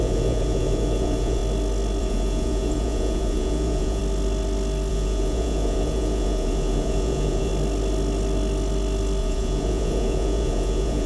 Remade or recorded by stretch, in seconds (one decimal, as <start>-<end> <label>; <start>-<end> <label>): 0.0-1.4 remade; 1.4-2.0 recorded; 2.0-4.0 remade; 4.0-4.9 recorded; 4.9-7.5 remade; 7.5-9.2 recorded; 9.2-11.1 remade